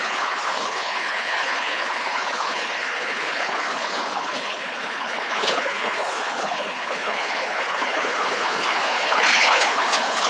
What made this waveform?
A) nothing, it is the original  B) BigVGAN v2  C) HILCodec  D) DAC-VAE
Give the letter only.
C